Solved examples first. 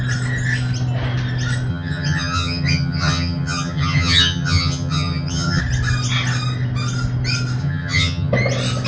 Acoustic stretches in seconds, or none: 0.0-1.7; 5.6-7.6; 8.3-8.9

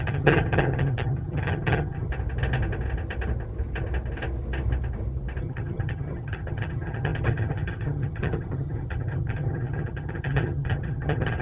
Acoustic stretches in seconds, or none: 2.1-5.4

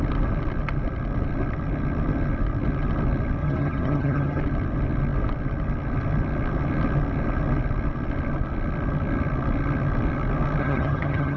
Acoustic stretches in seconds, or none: 0.0-3.4; 4.4-10.6

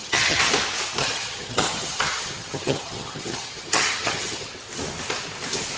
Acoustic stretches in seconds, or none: 0.5-1.0; 4.5-5.8

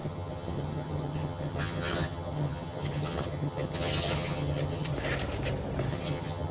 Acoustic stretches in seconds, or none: 4.9-5.9

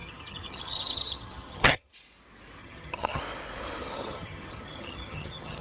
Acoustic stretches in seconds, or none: 1.9-2.6; 3.2-3.8

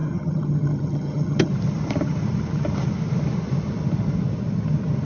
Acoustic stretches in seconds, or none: 1.5-5.0